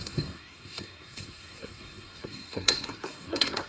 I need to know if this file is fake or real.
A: fake